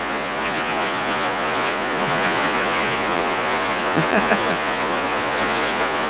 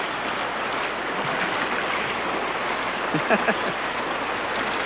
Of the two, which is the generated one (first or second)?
first